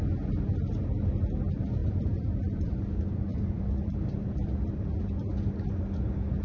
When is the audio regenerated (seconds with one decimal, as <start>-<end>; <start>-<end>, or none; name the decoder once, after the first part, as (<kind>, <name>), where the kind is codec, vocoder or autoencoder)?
1.8-2.7 (vocoder, BigVGAN v2); 3.3-5.0